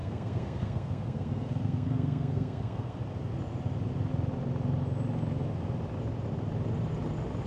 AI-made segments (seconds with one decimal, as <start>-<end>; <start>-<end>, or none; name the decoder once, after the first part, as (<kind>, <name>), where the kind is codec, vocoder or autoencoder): 0.0-3.0 (codec, SNAC)